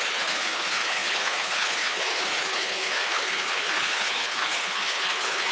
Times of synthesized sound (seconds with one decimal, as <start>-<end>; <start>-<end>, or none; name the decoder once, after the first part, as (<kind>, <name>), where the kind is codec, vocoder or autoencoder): 0.0-5.5 (codec, HILCodec)